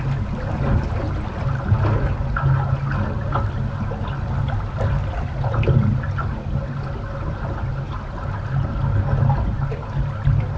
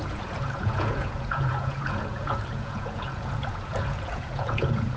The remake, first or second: second